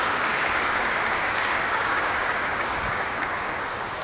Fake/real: fake